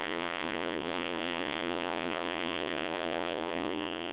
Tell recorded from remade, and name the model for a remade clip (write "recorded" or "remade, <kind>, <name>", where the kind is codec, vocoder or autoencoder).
remade, vocoder, Vocos